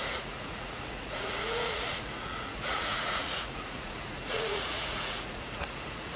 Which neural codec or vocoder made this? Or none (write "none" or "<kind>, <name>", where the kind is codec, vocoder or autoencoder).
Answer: vocoder, Vocos